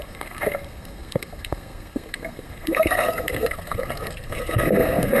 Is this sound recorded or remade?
remade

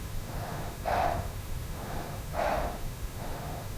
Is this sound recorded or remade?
remade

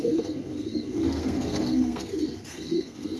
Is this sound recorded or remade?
remade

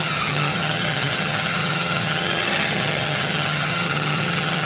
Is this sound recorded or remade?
remade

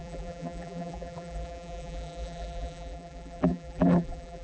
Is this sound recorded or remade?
remade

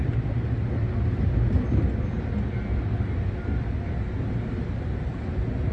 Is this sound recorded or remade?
recorded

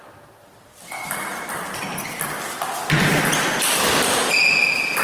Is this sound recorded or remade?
recorded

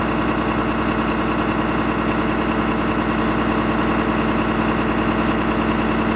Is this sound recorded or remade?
recorded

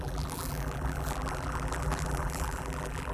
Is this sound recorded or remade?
remade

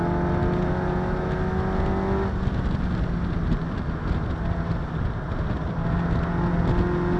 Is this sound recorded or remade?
recorded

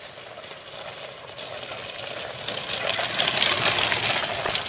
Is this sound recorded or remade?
recorded